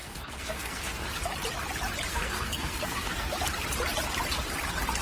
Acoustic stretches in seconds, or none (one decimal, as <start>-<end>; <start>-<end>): 1.1-2.1; 3.3-5.0